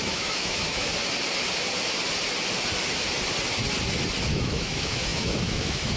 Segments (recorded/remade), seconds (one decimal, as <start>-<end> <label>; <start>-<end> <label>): 0.0-0.9 remade; 0.9-4.3 recorded; 4.3-6.0 remade